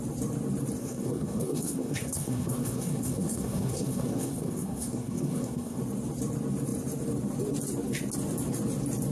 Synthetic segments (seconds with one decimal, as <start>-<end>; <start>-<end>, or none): 0.8-5.8